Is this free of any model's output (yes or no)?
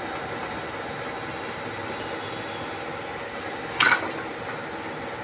yes